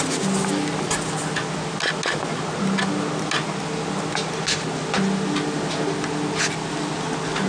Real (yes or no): yes